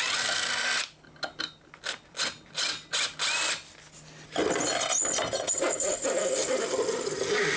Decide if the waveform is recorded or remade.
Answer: recorded